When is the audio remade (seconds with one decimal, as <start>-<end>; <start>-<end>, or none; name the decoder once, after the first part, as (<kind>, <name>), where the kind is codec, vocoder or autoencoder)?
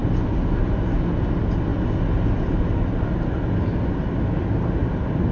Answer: none